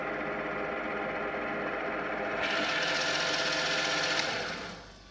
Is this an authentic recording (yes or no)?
yes